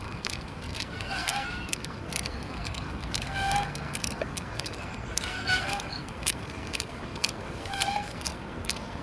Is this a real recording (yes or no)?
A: no